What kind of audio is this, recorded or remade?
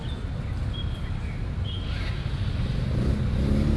recorded